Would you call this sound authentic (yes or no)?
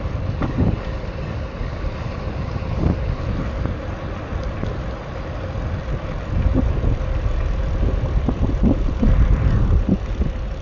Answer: yes